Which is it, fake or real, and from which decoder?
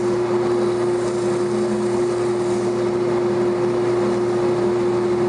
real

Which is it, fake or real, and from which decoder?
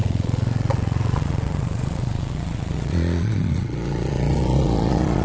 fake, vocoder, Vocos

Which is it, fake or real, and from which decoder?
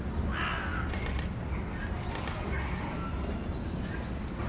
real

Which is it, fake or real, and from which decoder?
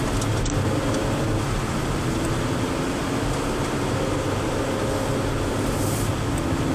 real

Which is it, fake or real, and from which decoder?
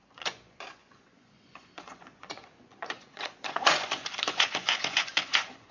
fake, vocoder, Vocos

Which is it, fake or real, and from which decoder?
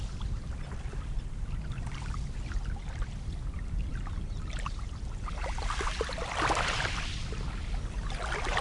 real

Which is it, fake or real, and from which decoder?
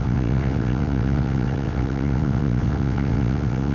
fake, vocoder, WaveNeXt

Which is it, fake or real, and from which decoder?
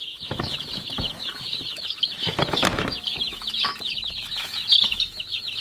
fake, autoencoder, DAC-VAE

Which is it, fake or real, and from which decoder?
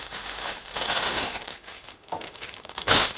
fake, autoencoder, DAC-VAE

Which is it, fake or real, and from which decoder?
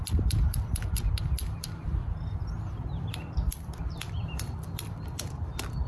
fake, vocoder, BigVGAN v2